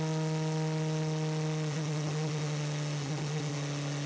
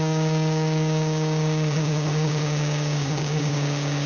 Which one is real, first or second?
first